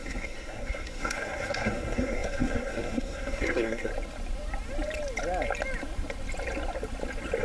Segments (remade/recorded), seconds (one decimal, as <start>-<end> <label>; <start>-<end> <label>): 0.0-3.9 remade; 3.9-7.4 recorded